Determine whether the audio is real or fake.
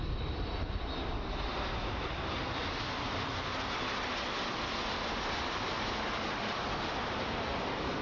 real